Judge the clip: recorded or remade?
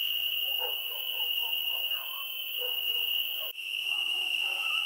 remade